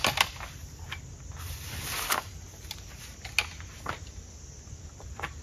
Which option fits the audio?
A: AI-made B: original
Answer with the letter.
B